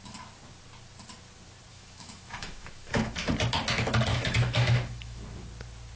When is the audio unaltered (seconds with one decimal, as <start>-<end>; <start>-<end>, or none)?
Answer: 0.0-1.7; 3.3-4.1; 5.2-6.0